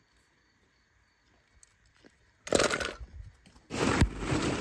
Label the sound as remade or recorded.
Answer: recorded